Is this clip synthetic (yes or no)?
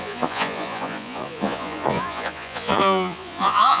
yes